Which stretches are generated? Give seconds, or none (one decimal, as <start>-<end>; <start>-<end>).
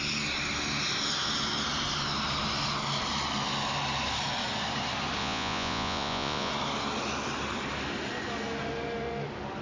5.2-6.5